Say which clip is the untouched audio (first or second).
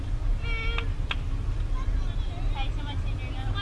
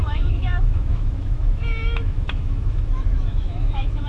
first